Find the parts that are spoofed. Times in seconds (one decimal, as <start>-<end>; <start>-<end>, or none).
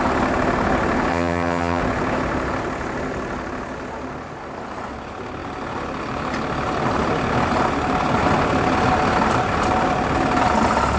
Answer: 1.1-1.8